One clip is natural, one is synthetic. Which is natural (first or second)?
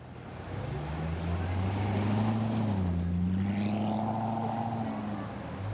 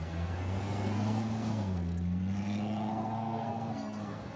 first